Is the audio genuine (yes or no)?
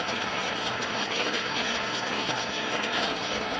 no